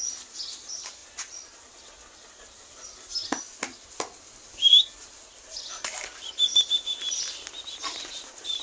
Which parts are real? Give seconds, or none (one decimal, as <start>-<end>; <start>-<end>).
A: 0.0-8.6